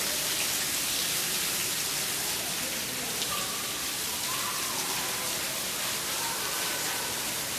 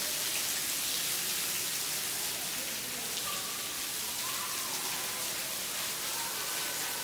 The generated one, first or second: first